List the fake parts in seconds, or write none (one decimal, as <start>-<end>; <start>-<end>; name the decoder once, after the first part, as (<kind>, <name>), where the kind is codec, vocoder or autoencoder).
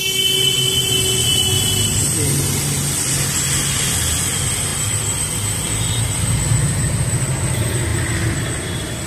none